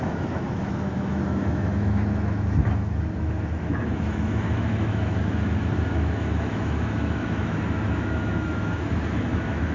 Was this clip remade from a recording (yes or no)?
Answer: yes